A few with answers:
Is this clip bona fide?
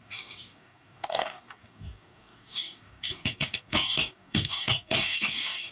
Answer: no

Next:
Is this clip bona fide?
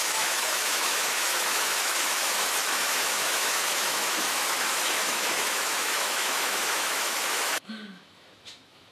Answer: no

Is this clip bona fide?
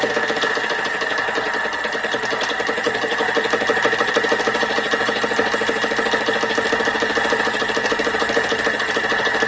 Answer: yes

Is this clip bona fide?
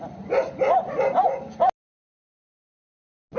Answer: yes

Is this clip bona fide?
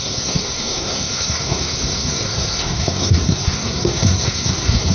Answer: no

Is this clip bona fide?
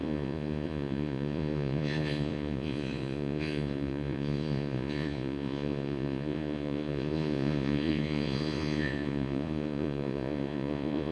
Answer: no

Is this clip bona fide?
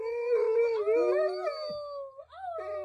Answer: yes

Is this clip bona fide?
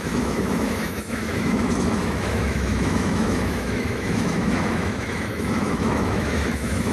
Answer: no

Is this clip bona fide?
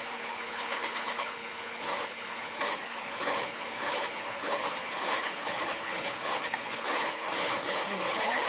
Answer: no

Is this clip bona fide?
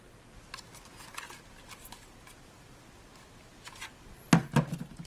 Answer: yes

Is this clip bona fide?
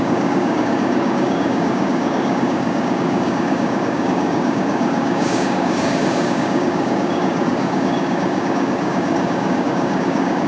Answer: no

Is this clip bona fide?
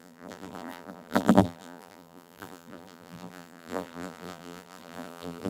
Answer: no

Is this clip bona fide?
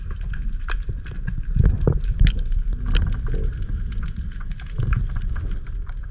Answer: yes